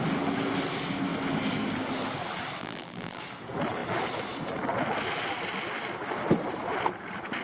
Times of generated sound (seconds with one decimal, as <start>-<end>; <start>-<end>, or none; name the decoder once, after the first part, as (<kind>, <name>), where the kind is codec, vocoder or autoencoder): 2.6-3.2 (vocoder, BigVGAN v2)